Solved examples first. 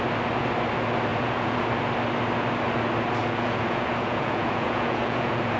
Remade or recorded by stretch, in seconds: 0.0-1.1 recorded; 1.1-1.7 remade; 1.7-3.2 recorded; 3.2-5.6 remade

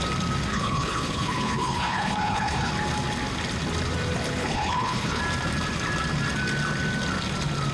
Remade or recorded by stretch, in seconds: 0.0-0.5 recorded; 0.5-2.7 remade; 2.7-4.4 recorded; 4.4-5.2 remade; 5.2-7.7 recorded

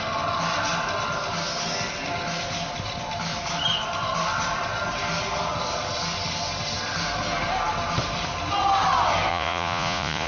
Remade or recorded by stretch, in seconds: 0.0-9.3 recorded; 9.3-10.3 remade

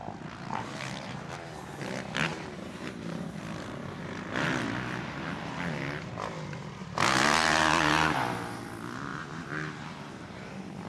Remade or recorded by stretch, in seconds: 0.0-1.3 remade; 1.3-2.3 recorded; 2.3-3.4 remade; 3.4-6.8 recorded; 6.8-8.6 remade; 8.6-9.1 recorded; 9.1-10.1 remade; 10.1-10.9 recorded